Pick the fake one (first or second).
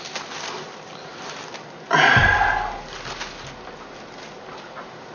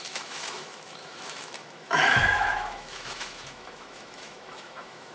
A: second